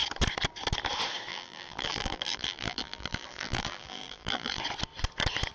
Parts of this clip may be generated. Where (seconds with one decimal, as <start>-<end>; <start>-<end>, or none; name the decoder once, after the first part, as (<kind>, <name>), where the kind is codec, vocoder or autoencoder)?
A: 1.3-4.6 (vocoder, BigVGAN v2)